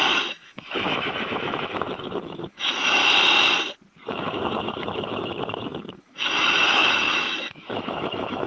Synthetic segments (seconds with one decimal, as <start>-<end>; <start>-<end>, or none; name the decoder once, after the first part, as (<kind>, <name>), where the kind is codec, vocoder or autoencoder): 0.0-3.0 (autoencoder, DAC-VAE); 4.1-8.5